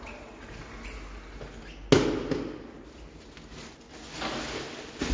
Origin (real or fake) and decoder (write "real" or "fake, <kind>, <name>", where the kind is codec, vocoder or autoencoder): real